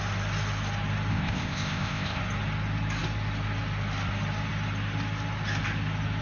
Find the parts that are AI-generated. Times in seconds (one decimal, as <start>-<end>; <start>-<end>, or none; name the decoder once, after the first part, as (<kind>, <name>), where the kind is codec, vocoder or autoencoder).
1.1-2.2 (codec, ZipCodec)